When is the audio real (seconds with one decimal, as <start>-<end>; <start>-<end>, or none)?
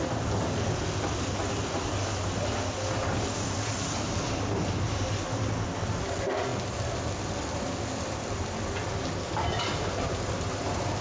0.0-11.0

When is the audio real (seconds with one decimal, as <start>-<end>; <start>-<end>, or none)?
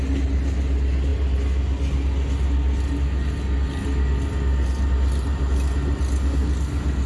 0.0-7.1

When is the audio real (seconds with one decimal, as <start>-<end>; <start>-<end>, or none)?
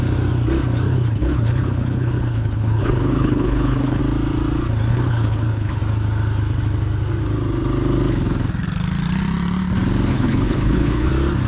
0.0-0.9; 4.0-4.9; 5.8-10.1; 11.1-11.5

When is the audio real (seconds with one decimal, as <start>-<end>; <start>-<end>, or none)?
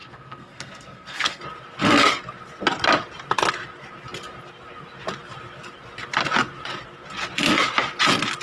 1.4-8.4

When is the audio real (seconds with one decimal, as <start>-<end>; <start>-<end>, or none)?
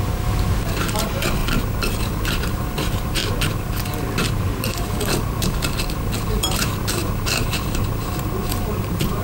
1.4-2.0; 3.2-6.6; 7.0-8.5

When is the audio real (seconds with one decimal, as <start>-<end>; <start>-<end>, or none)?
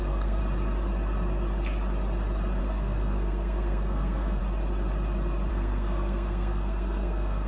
0.4-2.6; 4.4-5.5